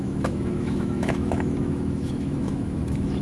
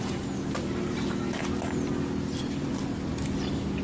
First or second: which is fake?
first